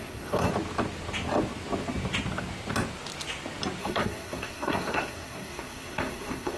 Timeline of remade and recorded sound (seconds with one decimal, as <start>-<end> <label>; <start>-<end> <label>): 0.0-0.5 remade; 0.5-3.8 recorded; 3.8-6.6 remade